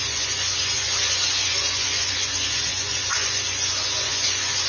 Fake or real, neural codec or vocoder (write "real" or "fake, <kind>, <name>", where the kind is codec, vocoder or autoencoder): fake, vocoder, Vocos